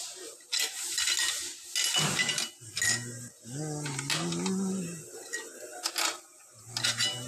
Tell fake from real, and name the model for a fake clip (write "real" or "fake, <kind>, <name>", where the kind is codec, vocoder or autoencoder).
real